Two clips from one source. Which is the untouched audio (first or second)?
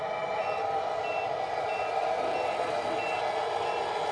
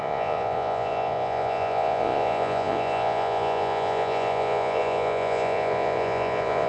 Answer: first